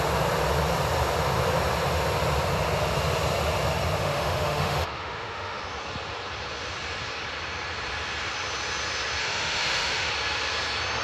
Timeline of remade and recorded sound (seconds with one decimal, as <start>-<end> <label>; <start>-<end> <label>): 0.0-4.0 recorded; 4.0-5.6 remade; 5.6-9.2 recorded; 9.2-10.1 remade; 10.1-11.0 recorded

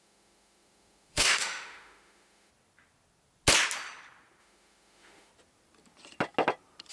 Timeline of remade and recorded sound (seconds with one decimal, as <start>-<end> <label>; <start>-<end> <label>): 0.0-2.5 remade; 2.5-4.4 recorded; 4.4-5.3 remade; 5.3-6.9 recorded

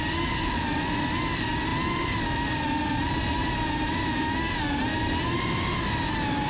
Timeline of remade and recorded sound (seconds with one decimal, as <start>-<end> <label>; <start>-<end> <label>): 0.0-6.5 recorded

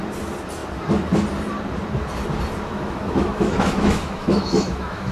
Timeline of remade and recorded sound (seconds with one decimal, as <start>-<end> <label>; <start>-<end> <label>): 0.0-2.7 recorded; 2.7-5.1 remade

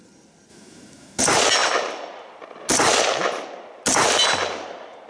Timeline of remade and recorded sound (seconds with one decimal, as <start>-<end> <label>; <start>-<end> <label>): 0.0-0.5 recorded; 0.5-1.2 remade; 1.2-5.1 recorded